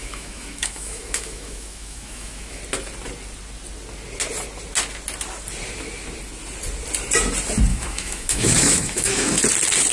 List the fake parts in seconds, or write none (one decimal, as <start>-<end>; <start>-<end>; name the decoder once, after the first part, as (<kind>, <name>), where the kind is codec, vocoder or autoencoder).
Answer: 0.0-2.6 (autoencoder, DAC-VAE); 7.7-9.4